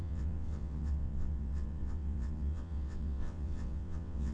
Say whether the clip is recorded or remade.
remade